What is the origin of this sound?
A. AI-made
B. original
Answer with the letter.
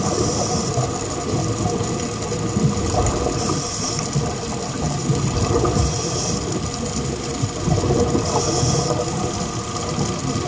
B